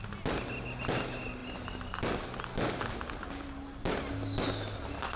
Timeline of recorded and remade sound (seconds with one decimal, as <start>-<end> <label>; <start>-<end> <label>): 0.0-5.2 recorded